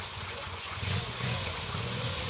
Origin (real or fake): fake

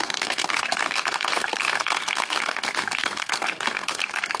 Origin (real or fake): fake